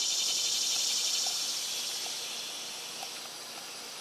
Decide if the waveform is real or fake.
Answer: real